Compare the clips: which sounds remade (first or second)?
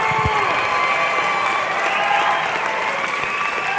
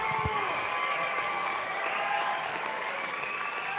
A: second